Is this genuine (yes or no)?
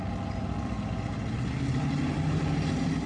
yes